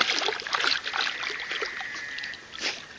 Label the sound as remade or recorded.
recorded